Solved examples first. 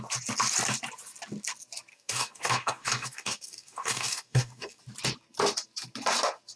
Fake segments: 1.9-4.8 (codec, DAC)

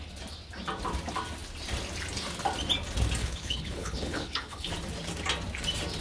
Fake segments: 3.2-4.7 (codec, HILCodec)

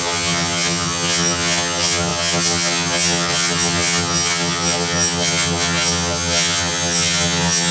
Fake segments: 0.0-7.7 (vocoder, HiFi-GAN)

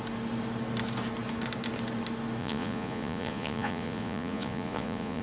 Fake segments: 2.4-5.2 (vocoder, Vocos)

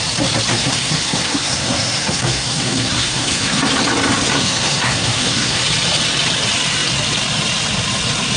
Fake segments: 0.5-3.6 (codec, SNAC); 4.3-5.6

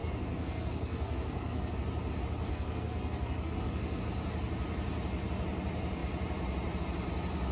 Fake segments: 0.0-1.7 (codec, SNAC); 2.5-4.0

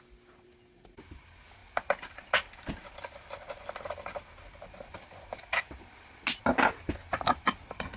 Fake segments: none

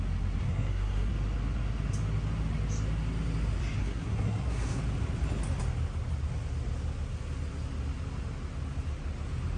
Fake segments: 0.4-1.1 (codec, SNAC); 3.8-4.8